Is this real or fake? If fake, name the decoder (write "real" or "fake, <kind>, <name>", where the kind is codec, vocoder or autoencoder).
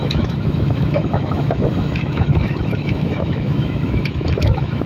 fake, autoencoder, DAC-VAE